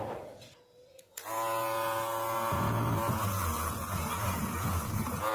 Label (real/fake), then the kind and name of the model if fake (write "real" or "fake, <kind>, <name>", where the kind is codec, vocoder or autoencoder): fake, vocoder, Vocos